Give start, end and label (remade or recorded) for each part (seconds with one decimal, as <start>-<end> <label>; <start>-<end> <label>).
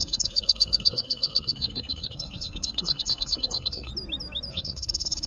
0.0-3.9 remade; 3.9-4.5 recorded; 4.5-5.3 remade